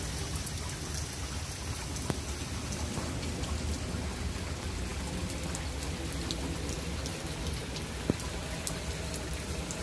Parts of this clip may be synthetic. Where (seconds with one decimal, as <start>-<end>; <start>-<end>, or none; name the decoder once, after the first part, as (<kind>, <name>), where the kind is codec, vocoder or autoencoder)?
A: none